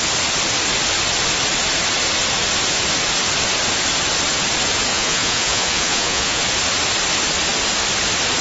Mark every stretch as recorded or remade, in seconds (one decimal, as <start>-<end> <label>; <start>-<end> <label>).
0.0-4.9 recorded; 4.9-6.4 remade; 6.4-8.4 recorded